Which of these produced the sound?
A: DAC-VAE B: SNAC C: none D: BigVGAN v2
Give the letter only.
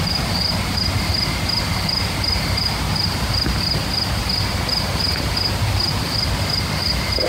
C